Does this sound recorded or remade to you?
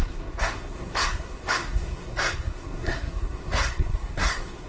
remade